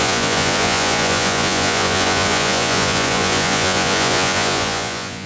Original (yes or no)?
no